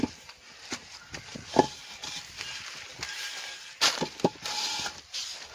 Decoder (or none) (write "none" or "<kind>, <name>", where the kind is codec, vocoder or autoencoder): none